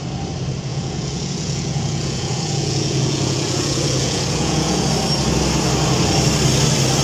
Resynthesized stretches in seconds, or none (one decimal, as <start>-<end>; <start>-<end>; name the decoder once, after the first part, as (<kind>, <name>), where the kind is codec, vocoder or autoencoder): 0.7-4.9 (vocoder, Vocos)